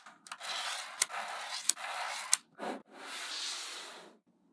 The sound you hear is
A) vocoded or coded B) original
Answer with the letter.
B